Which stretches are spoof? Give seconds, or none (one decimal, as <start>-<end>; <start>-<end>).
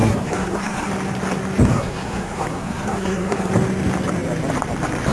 0.0-0.9; 1.7-3.5